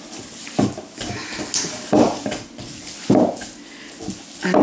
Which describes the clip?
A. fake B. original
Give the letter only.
B